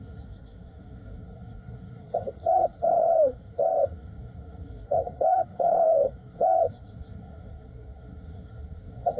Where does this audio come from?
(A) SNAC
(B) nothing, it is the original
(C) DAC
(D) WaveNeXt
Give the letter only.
A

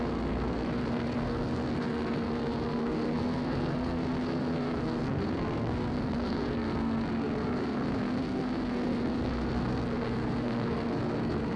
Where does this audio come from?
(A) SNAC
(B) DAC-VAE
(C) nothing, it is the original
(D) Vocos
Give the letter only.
A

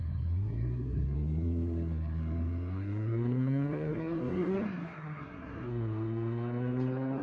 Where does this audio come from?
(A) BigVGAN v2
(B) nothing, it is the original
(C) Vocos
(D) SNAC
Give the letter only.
D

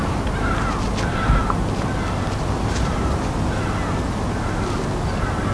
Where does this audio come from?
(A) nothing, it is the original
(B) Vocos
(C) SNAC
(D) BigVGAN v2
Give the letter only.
A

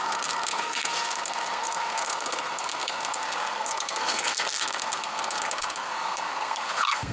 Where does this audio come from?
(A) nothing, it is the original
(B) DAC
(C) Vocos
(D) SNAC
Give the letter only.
D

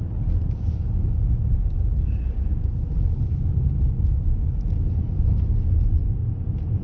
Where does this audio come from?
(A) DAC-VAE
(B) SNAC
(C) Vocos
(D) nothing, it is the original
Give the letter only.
D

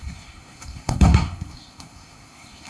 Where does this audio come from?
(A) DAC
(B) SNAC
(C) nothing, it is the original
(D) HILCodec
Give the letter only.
B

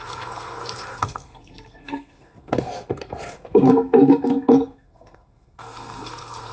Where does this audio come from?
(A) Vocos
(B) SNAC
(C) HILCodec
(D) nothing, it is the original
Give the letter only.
B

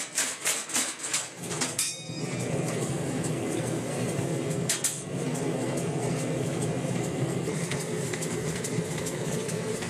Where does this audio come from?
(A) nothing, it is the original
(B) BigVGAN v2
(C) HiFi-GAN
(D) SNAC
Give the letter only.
D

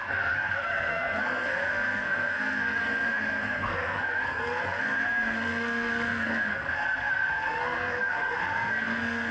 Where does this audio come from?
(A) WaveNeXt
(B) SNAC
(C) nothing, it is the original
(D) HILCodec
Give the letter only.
B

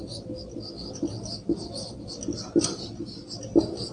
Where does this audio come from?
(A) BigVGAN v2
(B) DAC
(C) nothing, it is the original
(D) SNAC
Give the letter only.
C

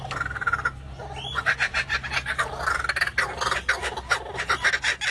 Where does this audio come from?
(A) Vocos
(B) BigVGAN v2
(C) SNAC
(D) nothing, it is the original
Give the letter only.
D